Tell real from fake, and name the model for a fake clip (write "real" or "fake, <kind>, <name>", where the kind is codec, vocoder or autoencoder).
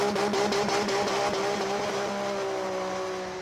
real